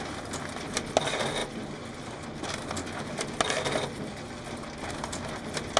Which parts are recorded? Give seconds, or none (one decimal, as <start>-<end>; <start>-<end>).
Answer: 0.0-5.8